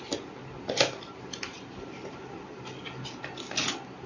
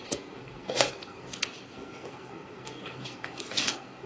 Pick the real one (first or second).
first